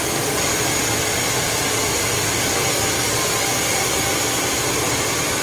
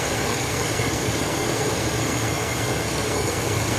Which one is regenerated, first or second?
second